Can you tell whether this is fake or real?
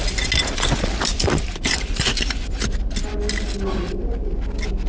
real